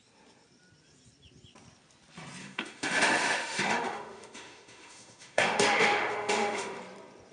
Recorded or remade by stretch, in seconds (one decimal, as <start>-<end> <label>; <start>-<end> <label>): 0.0-2.4 recorded; 2.4-6.8 remade; 6.8-7.3 recorded